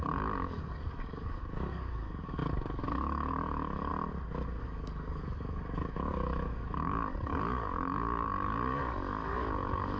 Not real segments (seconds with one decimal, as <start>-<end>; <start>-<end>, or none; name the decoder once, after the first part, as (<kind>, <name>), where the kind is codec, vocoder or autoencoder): 0.0-3.9 (codec, DAC); 4.6-10.0